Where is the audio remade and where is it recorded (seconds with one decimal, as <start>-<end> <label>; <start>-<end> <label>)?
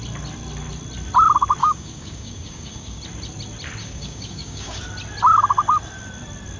0.0-1.6 recorded; 1.6-3.0 remade; 3.0-3.8 recorded; 3.8-4.8 remade; 4.8-6.6 recorded